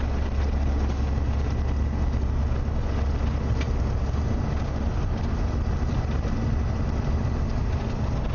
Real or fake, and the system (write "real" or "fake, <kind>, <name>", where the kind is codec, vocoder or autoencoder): real